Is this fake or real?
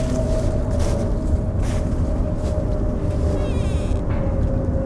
real